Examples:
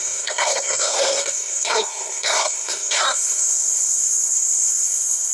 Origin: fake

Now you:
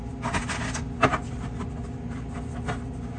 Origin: real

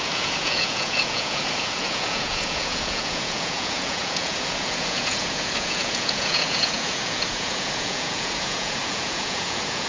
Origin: fake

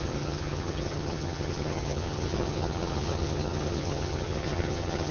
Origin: fake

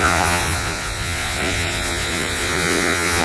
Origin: fake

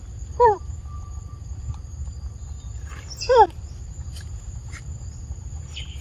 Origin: fake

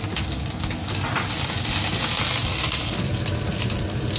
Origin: real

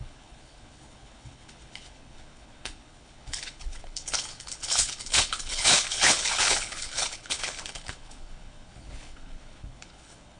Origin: fake